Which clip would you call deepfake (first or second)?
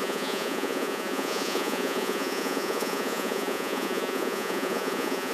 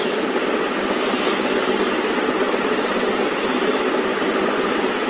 first